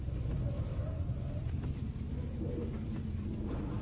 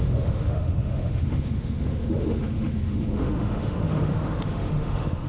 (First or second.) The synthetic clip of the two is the second